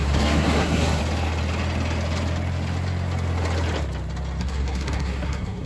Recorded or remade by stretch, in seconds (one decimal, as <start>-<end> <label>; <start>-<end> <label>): 0.0-1.0 remade; 1.0-4.4 recorded; 4.4-5.7 remade

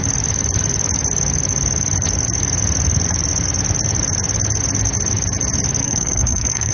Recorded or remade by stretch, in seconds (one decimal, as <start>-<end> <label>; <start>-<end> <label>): 0.0-5.8 recorded; 5.8-6.7 remade

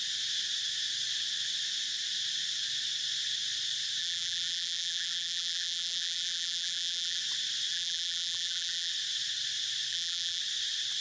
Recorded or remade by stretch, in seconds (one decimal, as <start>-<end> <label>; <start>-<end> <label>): 0.0-4.0 recorded; 4.0-7.2 remade; 7.2-7.7 recorded; 7.7-8.9 remade; 8.9-9.9 recorded; 9.9-10.4 remade; 10.4-11.0 recorded

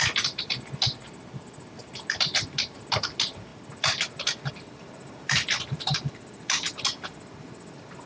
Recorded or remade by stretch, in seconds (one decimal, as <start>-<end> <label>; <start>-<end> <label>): 0.0-8.1 recorded

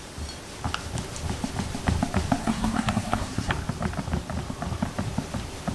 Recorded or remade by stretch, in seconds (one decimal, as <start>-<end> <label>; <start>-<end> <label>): 0.0-2.4 recorded; 2.4-3.5 remade; 3.5-5.7 recorded

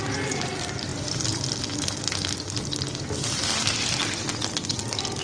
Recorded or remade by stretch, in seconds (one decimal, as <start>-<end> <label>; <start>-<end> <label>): 0.0-5.2 recorded

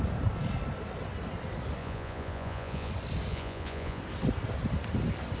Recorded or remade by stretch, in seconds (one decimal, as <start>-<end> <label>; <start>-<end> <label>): 0.0-1.8 recorded; 1.8-2.9 remade; 2.9-3.3 recorded; 3.3-4.0 remade; 4.0-5.4 recorded

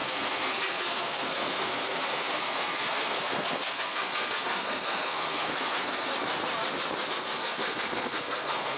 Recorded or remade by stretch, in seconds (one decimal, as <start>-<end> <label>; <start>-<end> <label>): 0.0-6.1 remade; 6.1-7.1 recorded; 7.1-8.8 remade